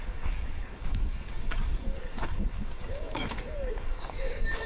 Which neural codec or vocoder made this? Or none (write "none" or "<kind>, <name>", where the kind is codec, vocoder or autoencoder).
codec, DAC